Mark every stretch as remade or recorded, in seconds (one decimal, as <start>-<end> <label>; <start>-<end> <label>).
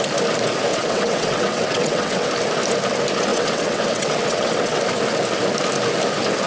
0.0-0.7 recorded; 0.7-2.3 remade; 2.3-3.3 recorded; 3.3-4.8 remade; 4.8-6.5 recorded